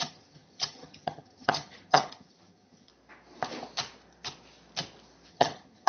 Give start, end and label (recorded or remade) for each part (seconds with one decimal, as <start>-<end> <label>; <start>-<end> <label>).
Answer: 0.0-2.9 remade; 2.9-5.3 recorded; 5.3-5.9 remade